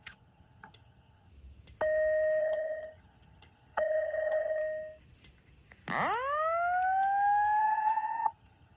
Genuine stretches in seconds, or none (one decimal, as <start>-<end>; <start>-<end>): 1.3-2.4; 4.6-7.6